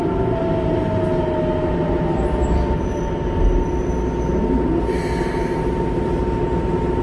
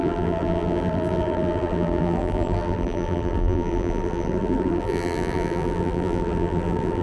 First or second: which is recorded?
first